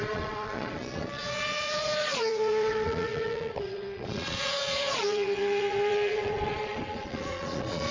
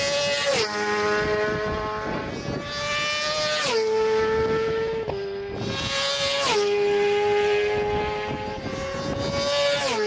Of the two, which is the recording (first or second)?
second